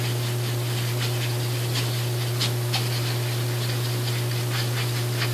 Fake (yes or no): no